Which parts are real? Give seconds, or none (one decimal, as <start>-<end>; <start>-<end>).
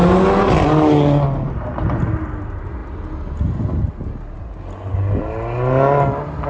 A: 0.0-6.5